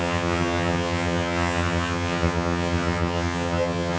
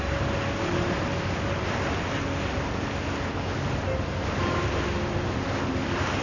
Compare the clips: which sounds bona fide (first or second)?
second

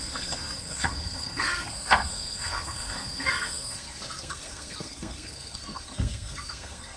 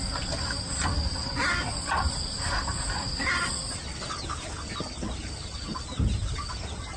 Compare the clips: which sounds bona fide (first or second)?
second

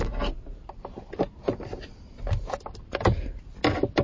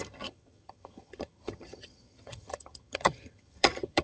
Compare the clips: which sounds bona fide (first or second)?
first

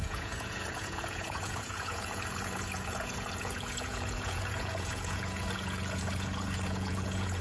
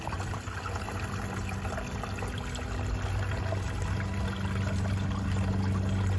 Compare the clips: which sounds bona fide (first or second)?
second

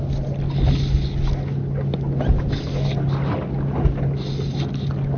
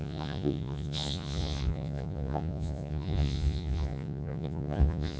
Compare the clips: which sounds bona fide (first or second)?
first